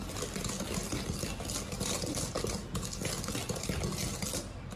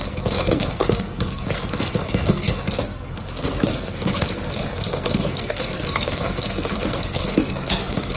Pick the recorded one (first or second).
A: first